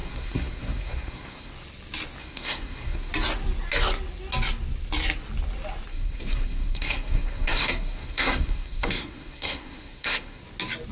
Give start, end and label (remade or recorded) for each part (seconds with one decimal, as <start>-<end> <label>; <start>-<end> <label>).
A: 0.0-1.5 remade; 1.5-2.2 recorded; 2.2-3.1 remade; 3.1-5.9 recorded; 5.9-10.4 remade; 10.4-10.9 recorded